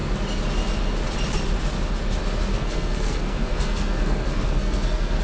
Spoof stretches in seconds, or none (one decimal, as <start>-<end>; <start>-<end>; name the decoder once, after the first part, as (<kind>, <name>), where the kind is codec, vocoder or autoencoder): 2.5-5.2 (codec, SNAC)